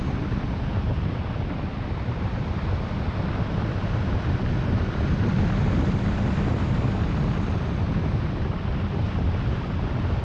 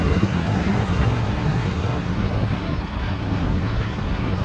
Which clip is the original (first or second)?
first